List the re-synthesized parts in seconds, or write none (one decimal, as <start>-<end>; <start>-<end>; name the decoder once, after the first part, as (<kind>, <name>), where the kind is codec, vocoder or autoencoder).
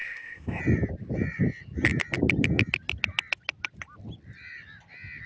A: 0.0-0.6 (codec, ZipCodec)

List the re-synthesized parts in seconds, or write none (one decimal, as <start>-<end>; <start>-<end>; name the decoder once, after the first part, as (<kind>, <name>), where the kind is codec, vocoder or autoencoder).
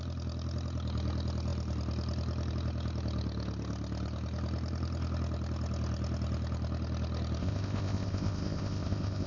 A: 7.4-9.3 (codec, ZipCodec)